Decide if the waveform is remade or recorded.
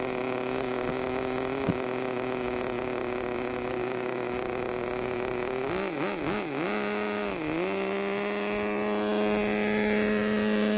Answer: recorded